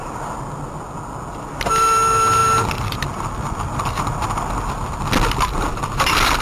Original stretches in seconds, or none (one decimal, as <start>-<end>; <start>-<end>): 0.0-6.4